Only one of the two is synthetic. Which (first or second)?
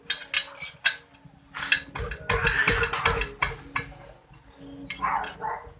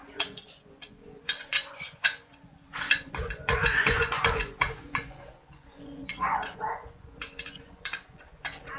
second